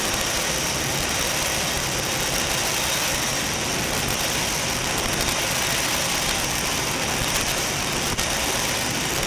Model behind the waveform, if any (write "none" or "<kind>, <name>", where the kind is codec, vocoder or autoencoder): none